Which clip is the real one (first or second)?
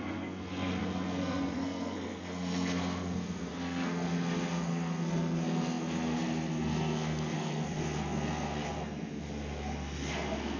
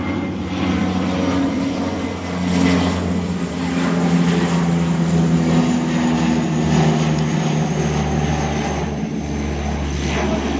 second